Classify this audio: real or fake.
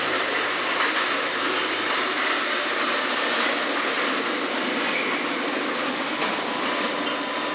fake